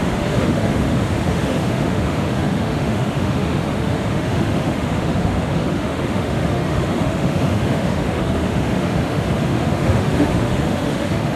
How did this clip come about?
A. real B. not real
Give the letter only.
B